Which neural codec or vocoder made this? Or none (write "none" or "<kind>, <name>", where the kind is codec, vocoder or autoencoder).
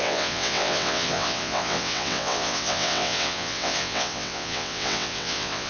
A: vocoder, WaveNeXt